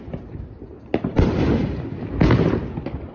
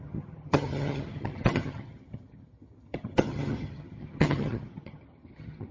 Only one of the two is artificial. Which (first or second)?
second